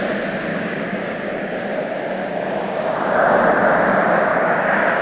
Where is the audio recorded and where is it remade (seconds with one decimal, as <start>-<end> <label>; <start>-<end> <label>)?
0.0-0.5 recorded; 0.5-1.6 remade; 1.6-2.2 recorded; 2.2-3.4 remade; 3.4-4.3 recorded; 4.3-5.0 remade